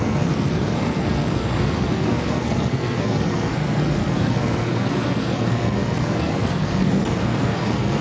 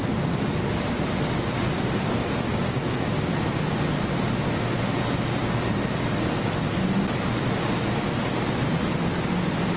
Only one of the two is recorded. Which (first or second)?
second